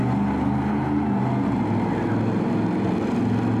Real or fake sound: real